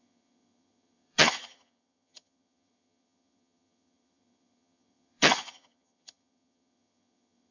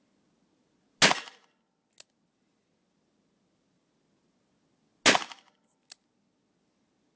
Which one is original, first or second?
second